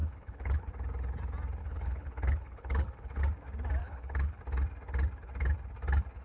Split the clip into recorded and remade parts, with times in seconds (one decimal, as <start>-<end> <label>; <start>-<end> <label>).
0.0-0.7 remade; 0.7-1.6 recorded; 1.6-3.2 remade; 3.2-3.8 recorded; 3.8-4.4 remade; 4.4-6.2 recorded